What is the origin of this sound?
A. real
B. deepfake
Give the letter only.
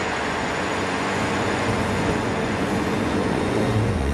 B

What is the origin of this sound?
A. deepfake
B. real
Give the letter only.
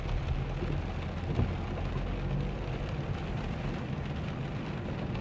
B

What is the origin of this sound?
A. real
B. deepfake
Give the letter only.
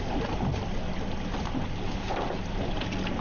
A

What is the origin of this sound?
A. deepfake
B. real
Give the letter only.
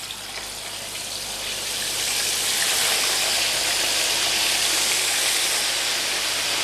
B